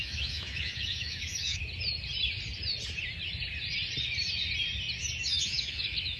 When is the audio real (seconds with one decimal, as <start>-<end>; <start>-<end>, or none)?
1.6-5.3